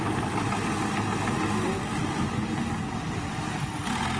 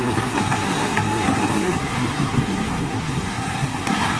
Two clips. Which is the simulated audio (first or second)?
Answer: second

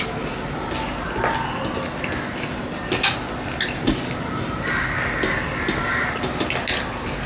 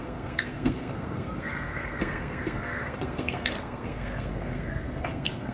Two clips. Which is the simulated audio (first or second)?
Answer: second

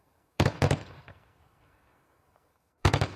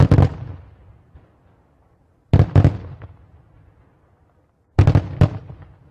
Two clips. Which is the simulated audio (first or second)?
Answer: first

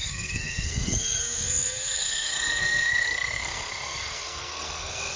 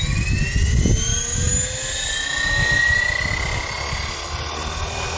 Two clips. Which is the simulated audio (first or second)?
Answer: first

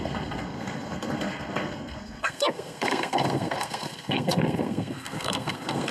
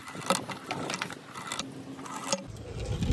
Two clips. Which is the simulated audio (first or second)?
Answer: first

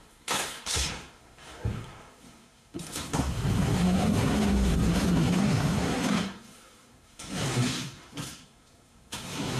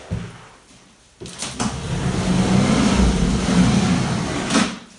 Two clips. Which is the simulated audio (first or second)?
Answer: first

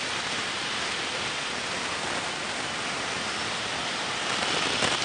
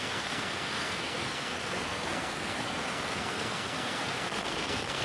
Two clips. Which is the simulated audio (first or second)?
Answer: second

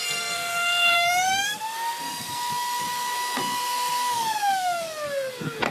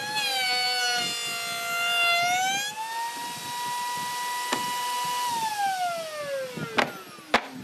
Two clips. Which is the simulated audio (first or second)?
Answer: first